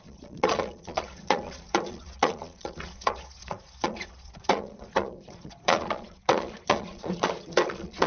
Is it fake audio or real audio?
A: fake